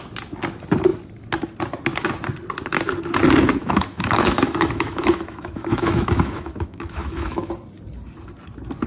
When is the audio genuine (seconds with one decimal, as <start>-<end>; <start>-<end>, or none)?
0.0-3.6; 7.5-8.9